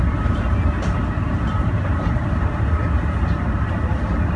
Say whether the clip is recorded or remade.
remade